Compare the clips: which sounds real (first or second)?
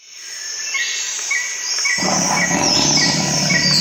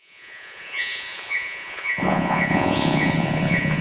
first